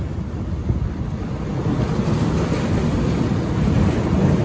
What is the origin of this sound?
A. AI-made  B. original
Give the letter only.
B